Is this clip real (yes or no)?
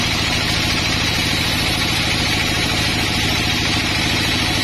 no